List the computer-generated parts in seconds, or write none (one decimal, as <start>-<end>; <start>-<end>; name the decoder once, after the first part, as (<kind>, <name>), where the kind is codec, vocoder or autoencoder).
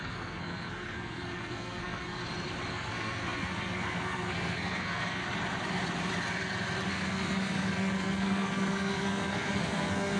0.0-2.2 (codec, SNAC); 2.7-5.2; 6.9-10.2